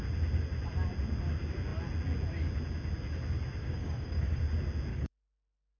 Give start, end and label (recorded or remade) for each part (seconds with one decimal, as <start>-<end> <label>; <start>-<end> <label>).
0.0-3.6 recorded; 3.6-4.4 remade; 4.4-4.9 recorded; 4.9-5.8 remade